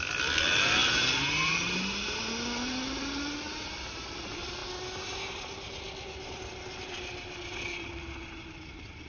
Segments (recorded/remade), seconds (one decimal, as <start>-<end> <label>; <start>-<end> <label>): 0.0-4.6 remade; 4.6-6.8 recorded; 6.8-9.1 remade